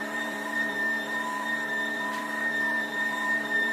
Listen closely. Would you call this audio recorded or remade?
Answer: remade